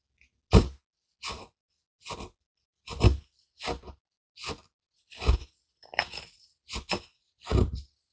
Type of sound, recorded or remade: recorded